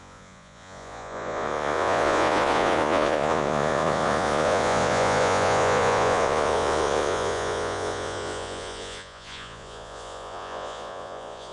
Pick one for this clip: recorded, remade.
remade